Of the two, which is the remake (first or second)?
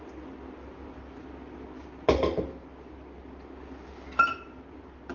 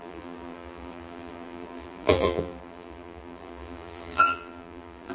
second